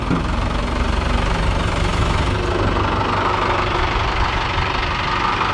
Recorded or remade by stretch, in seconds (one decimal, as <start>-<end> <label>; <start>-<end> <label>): 0.0-5.5 recorded